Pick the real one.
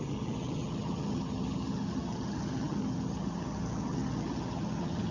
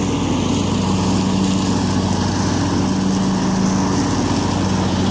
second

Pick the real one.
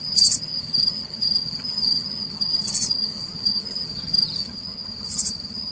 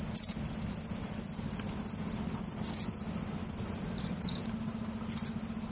second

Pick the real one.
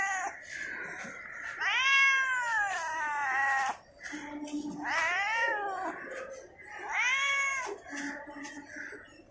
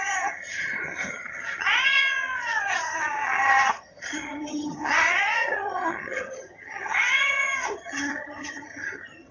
first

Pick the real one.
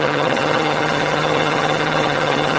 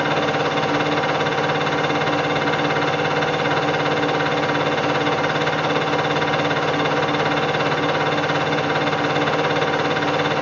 second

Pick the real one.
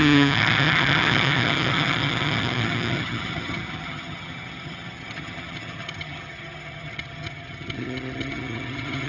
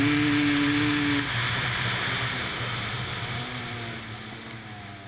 second